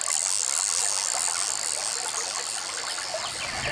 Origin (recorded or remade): recorded